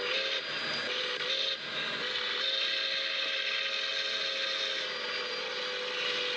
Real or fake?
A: real